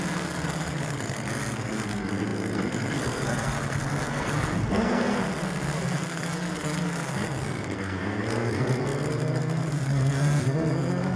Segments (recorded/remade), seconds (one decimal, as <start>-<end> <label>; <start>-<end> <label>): 0.0-11.2 remade